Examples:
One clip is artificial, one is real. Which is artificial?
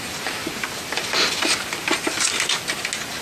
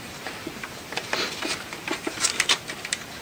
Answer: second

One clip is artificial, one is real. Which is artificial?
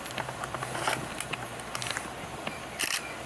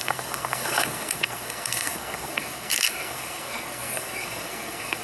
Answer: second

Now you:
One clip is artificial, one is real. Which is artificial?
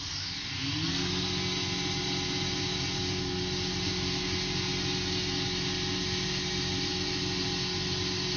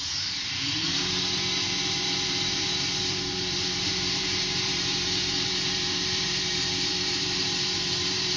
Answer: second